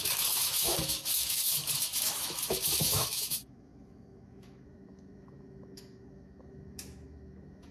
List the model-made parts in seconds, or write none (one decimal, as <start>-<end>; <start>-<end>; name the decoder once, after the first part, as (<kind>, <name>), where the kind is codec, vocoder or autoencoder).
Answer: 0.0-7.7 (autoencoder, DAC-VAE)